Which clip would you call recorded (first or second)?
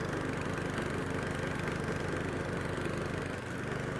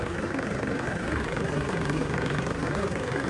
first